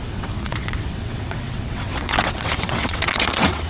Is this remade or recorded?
remade